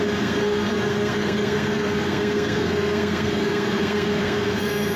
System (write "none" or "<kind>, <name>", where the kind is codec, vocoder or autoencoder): codec, SNAC